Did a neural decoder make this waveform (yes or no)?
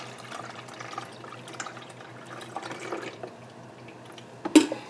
no